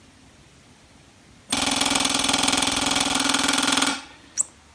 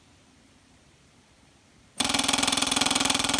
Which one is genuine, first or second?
first